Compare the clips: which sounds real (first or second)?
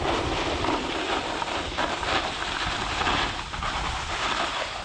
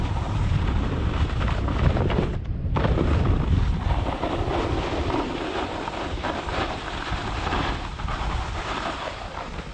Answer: first